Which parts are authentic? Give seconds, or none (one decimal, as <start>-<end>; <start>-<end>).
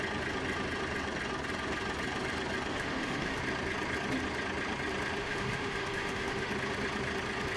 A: 0.0-2.7; 3.4-5.2; 6.5-7.6